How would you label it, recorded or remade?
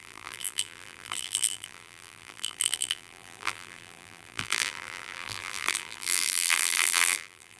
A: remade